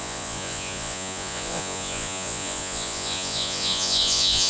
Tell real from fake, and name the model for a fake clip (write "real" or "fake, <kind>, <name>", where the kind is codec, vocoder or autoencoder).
fake, vocoder, Vocos